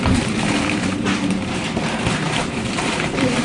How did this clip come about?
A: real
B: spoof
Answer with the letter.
B